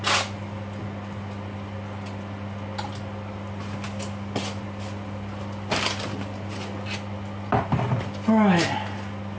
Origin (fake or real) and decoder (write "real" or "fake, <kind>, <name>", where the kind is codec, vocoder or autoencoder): real